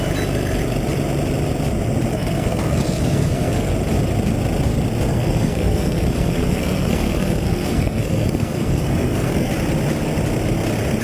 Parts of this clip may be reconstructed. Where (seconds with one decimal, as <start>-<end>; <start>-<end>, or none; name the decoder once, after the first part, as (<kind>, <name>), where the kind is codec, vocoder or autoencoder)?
2.1-3.7 (codec, SNAC); 5.1-9.5